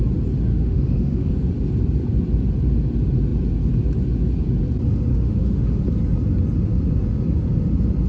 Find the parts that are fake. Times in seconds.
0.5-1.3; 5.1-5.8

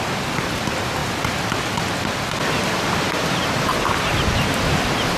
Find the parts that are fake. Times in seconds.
none

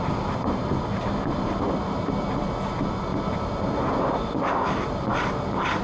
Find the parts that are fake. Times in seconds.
none

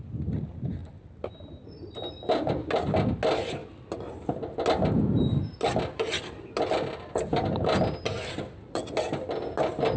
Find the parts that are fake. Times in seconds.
0.8-1.3; 7.3-8.8